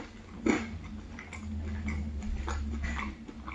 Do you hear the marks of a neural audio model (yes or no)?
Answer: no